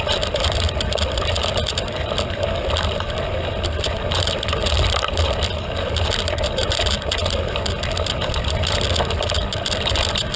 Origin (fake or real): real